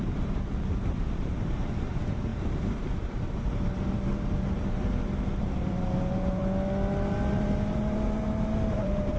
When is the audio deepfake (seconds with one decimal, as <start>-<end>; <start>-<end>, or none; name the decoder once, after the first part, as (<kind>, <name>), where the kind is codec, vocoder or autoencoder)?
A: 0.0-6.4 (vocoder, BigVGAN v2); 7.3-9.2